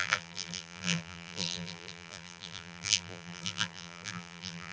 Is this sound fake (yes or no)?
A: yes